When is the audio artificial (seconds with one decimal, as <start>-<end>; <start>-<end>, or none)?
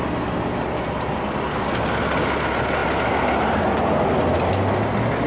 none